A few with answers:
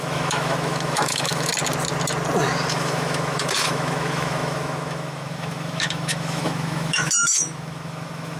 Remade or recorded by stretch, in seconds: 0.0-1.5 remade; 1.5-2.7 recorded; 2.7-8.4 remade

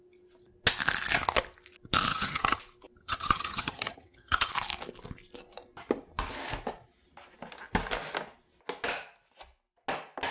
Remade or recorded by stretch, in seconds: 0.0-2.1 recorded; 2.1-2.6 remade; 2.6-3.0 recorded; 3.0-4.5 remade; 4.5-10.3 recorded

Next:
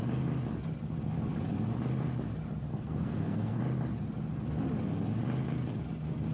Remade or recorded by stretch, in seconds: 0.0-2.7 recorded; 2.7-3.6 remade; 3.6-6.3 recorded

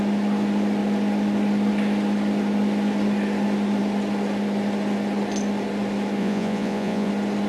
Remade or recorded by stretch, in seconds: 0.0-6.2 recorded; 6.2-7.1 remade; 7.1-7.5 recorded

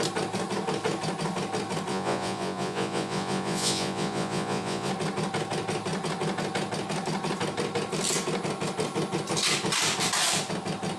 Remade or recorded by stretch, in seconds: 0.0-1.9 recorded; 1.9-4.9 remade; 4.9-11.0 recorded